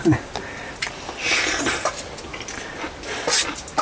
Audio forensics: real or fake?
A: real